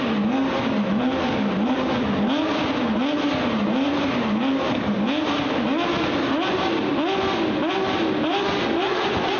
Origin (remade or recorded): recorded